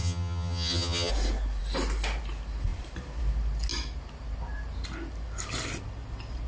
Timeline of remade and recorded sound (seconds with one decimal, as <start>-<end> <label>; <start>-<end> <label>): 0.0-1.1 remade; 1.1-6.5 recorded

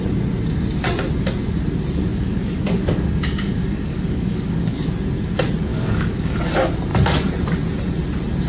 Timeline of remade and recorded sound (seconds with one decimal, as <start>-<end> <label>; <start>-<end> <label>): 0.0-2.1 recorded; 2.1-4.9 remade; 4.9-5.7 recorded; 5.7-6.4 remade; 6.4-8.5 recorded

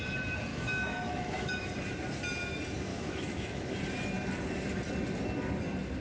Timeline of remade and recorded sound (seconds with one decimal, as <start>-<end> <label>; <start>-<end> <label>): 0.0-0.5 recorded; 0.5-1.7 remade; 1.7-2.9 recorded; 2.9-3.7 remade; 3.7-6.0 recorded

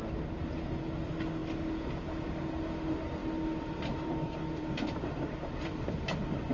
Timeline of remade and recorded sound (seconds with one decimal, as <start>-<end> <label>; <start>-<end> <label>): 0.0-3.2 recorded; 3.2-6.5 remade

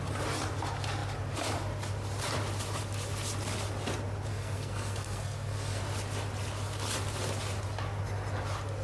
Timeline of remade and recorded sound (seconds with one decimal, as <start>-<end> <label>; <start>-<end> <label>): 0.0-4.3 recorded; 4.3-5.8 remade; 5.8-8.8 recorded